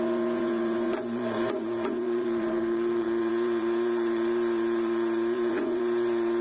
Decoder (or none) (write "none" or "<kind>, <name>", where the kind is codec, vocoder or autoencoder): vocoder, Vocos